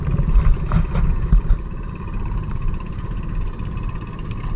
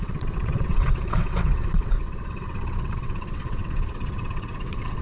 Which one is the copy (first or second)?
second